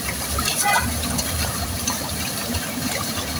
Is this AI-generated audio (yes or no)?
yes